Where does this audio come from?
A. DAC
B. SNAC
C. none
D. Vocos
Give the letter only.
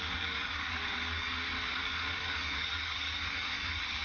A